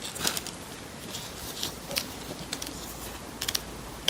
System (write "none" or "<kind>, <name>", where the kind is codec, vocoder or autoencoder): none